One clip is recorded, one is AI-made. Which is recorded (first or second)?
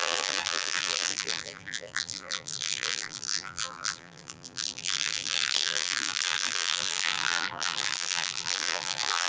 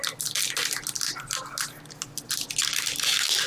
second